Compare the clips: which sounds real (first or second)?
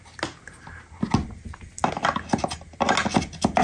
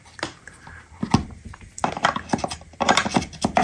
first